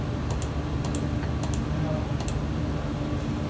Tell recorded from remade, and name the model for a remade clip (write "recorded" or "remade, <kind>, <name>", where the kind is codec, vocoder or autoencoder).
recorded